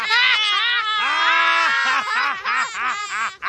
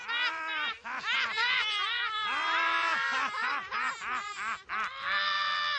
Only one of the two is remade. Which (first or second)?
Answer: second